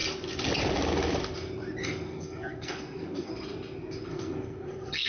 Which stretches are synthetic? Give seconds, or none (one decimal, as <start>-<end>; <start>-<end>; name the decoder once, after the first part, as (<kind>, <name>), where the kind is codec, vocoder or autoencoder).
1.8-3.3 (codec, SNAC); 4.1-5.1